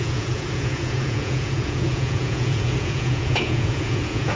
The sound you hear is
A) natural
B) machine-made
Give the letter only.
B